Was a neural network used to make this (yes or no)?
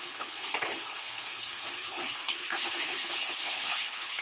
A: yes